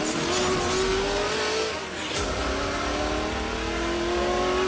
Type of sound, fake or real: real